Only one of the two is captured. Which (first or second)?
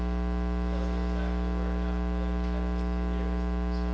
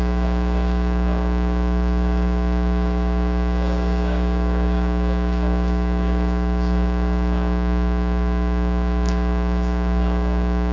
first